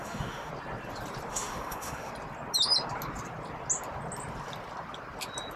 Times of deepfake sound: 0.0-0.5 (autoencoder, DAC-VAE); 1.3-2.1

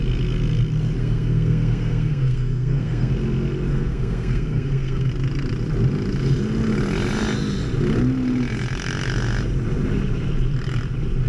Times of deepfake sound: 1.0-3.1 (codec, SNAC); 3.7-5.1